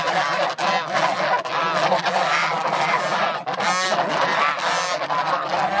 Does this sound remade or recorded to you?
recorded